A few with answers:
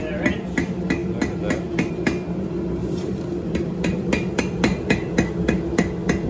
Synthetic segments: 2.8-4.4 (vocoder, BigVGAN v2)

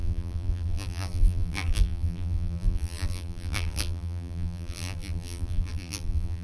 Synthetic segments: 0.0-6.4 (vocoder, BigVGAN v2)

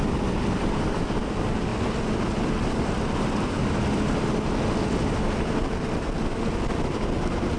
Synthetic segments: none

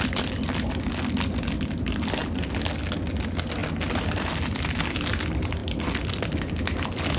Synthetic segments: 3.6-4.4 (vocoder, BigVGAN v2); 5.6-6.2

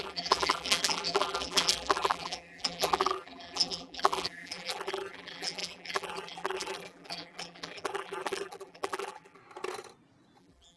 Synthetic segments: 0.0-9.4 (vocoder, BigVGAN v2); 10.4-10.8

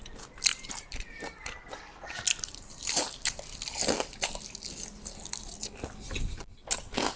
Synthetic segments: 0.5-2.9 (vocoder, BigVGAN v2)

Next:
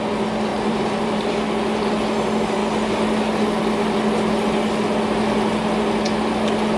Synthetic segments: 0.5-1.3 (vocoder, BigVGAN v2)